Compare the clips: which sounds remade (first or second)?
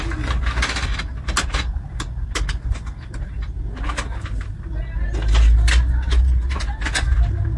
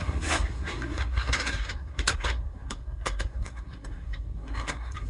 second